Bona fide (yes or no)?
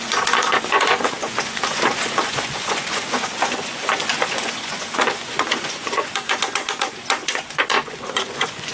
no